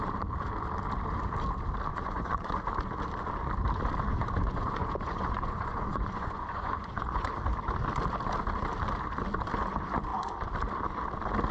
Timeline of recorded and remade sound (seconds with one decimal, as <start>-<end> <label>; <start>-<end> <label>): 0.0-1.9 recorded; 1.9-2.6 remade; 2.6-4.1 recorded; 4.1-7.3 remade; 7.3-11.5 recorded